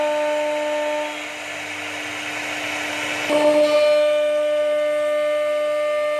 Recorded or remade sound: recorded